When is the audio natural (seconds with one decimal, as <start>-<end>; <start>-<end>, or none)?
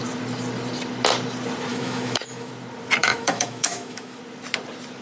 0.0-1.7; 2.5-3.0; 4.2-5.0